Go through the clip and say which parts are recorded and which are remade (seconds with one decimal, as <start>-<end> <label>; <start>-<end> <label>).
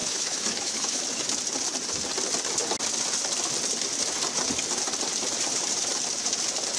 0.0-1.0 remade; 1.0-6.8 recorded